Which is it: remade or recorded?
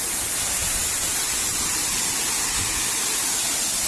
recorded